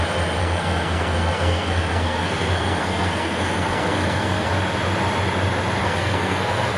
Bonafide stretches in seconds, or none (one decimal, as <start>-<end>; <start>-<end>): 0.0-0.4; 4.5-5.8